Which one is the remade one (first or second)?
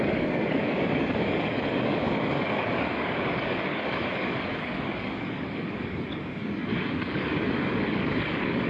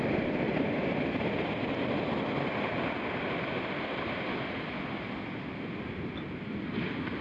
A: first